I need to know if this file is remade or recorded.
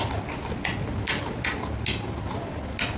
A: recorded